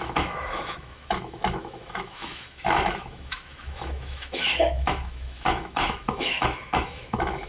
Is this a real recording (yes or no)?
no